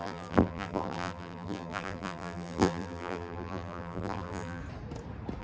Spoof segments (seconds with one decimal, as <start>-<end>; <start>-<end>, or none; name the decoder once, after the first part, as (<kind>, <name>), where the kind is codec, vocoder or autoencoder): 0.0-4.6 (vocoder, BigVGAN v2)

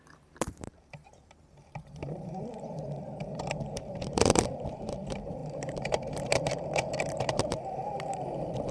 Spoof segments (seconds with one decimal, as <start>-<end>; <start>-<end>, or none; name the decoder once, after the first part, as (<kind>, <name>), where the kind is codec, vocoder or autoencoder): 0.0-8.7 (vocoder, BigVGAN v2)

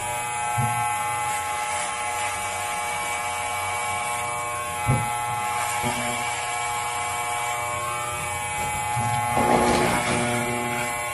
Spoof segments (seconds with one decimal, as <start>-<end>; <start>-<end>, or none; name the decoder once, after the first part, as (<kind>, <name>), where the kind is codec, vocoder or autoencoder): none